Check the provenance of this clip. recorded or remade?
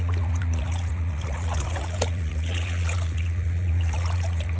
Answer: remade